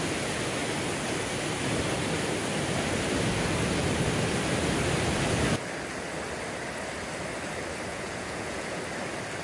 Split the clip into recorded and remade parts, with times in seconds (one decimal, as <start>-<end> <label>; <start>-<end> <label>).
0.0-7.9 recorded; 7.9-8.8 remade; 8.8-9.4 recorded